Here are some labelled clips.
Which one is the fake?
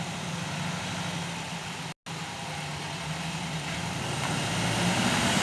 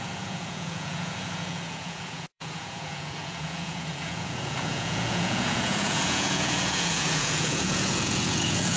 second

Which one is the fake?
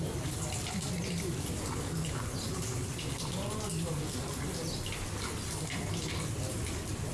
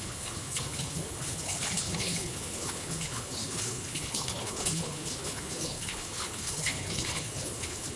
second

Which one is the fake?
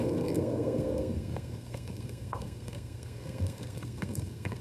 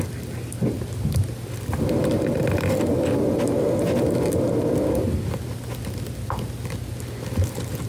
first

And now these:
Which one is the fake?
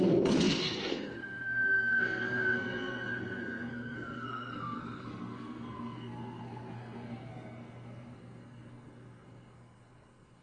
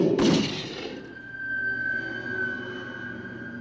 first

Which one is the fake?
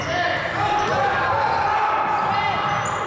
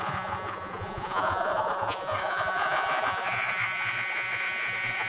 second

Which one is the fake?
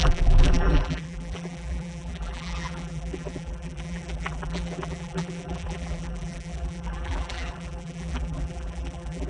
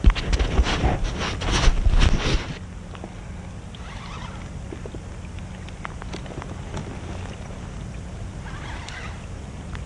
first